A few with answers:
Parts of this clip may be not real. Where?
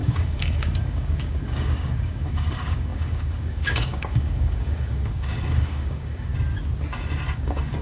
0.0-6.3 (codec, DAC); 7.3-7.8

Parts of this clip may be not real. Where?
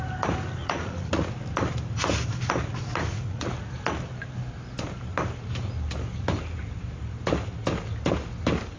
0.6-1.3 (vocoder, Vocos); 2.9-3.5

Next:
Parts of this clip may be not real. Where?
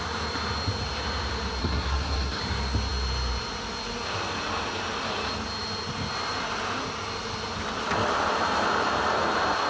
1.6-2.4 (codec, SNAC)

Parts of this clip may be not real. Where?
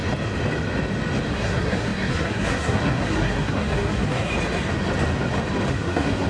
1.3-4.3 (codec, SNAC); 5.7-6.3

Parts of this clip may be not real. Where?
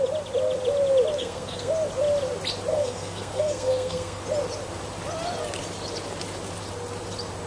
1.2-1.7 (codec, SNAC); 2.7-4.2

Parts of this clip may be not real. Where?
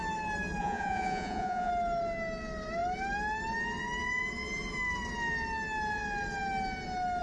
0.6-1.7 (vocoder, Vocos)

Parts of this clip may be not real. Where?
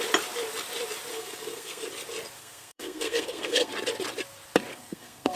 1.1-1.9 (codec, SNAC); 2.4-3.7; 4.7-5.4